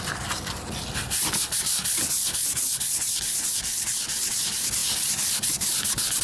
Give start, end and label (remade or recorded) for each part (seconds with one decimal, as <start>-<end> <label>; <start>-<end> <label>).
0.0-6.2 recorded